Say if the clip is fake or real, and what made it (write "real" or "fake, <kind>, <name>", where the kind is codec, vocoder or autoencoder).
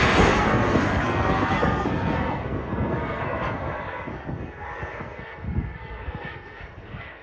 fake, codec, SNAC